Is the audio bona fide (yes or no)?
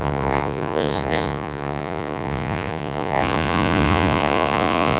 no